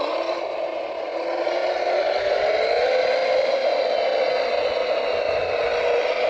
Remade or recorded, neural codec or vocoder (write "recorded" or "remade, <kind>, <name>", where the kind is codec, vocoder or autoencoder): recorded